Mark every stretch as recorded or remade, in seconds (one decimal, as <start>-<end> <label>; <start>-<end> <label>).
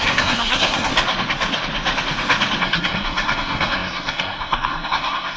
0.0-0.9 remade; 0.9-2.6 recorded; 2.6-5.4 remade